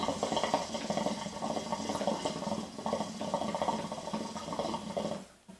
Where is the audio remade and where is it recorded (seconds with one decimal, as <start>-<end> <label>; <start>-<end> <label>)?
0.0-5.6 recorded